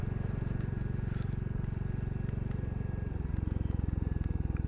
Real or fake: real